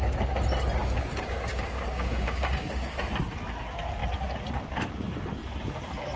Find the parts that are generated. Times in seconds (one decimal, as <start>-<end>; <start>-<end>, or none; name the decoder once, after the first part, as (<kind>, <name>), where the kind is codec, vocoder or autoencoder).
0.8-3.0 (codec, DAC)